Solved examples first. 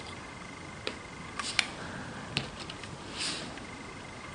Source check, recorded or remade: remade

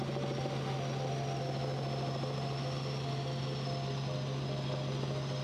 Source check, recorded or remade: recorded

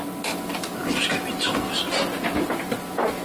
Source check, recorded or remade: recorded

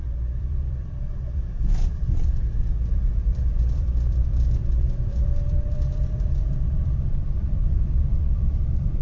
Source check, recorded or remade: remade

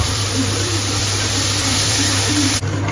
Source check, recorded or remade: remade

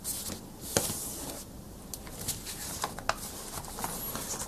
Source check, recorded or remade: recorded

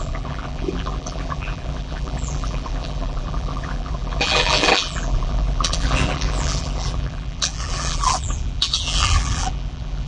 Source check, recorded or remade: remade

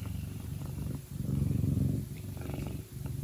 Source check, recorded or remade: remade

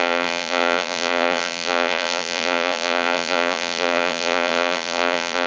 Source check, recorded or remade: remade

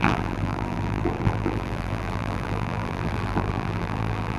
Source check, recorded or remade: remade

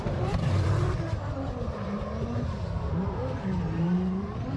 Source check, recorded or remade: remade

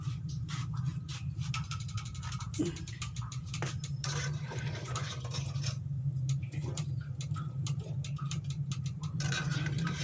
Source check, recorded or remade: remade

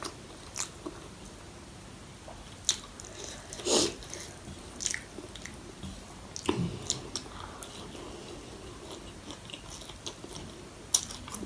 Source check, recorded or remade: recorded